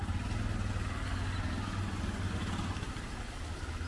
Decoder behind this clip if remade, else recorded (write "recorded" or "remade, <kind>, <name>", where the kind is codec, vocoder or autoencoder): recorded